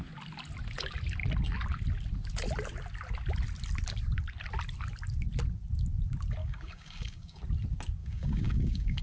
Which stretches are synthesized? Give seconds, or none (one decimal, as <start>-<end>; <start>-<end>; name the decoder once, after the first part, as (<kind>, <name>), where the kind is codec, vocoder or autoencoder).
6.4-7.4 (codec, DAC); 8.0-9.0